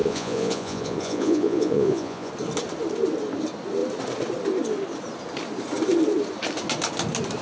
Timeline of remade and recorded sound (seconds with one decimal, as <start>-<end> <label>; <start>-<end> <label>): 0.0-2.3 remade; 2.3-7.4 recorded